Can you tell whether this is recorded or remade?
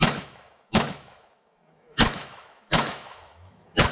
remade